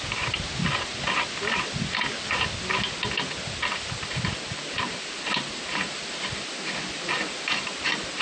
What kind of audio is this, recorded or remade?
recorded